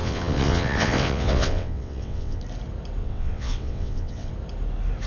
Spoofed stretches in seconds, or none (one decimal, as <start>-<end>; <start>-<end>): 0.0-2.4; 3.0-4.3